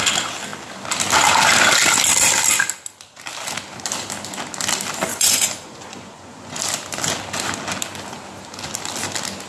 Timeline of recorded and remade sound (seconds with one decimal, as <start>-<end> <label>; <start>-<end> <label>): 0.0-5.1 recorded; 5.1-6.6 remade; 6.6-9.5 recorded